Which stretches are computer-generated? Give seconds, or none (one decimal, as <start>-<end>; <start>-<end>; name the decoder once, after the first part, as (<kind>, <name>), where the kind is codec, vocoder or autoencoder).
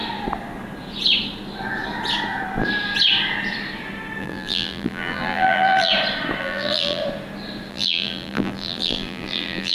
4.2-5.9 (vocoder, BigVGAN v2); 6.4-7.0; 7.7-9.7